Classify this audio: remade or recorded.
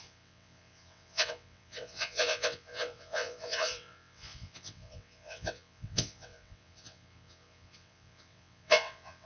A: remade